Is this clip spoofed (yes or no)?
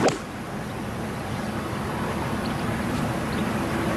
no